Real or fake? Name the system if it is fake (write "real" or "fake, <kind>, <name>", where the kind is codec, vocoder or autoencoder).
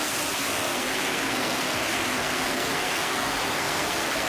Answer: fake, codec, SNAC